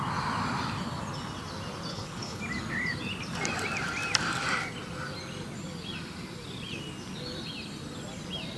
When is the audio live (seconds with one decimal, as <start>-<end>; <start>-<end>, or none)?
0.0-1.9; 2.4-8.6

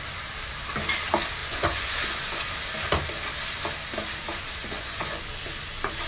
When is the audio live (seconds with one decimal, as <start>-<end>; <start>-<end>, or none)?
0.0-1.4; 2.4-4.6; 5.2-6.1

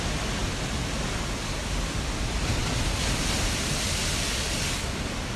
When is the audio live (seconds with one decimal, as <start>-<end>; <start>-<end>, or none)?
0.0-5.4